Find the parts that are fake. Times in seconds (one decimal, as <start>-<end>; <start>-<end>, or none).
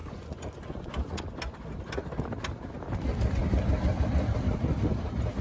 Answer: 0.0-1.2